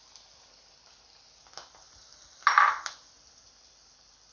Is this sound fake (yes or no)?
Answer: no